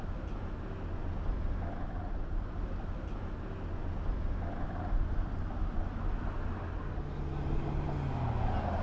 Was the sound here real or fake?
real